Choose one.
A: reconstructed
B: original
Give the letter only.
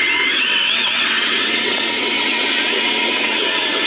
A